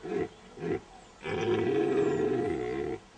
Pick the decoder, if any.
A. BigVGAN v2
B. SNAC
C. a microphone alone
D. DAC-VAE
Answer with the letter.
C